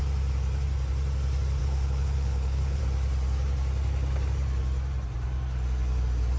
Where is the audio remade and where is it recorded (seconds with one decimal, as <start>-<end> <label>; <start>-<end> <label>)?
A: 0.0-1.6 recorded; 1.6-2.8 remade; 2.8-6.4 recorded